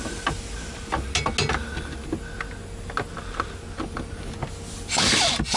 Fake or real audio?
real